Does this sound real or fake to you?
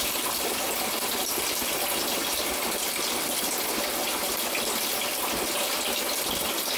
fake